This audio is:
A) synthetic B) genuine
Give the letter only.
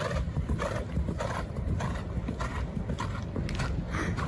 B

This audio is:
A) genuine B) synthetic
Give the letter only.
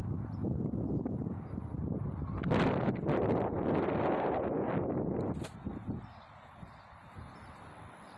A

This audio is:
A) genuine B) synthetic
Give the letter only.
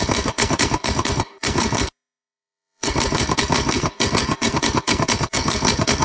B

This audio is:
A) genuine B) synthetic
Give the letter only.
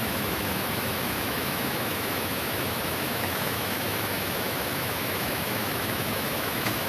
B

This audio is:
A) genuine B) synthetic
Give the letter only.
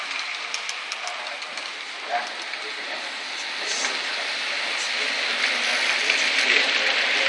A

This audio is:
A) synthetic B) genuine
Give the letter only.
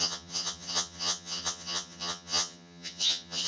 A